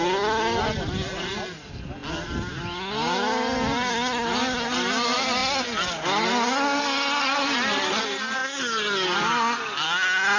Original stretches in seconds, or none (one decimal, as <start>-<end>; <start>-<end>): 0.0-10.4